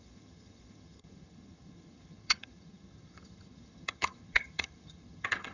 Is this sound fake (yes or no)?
yes